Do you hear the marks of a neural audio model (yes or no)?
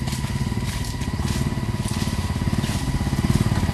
no